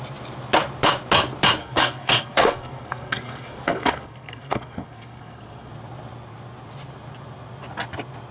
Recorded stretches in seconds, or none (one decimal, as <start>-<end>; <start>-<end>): 0.0-1.6; 5.7-8.3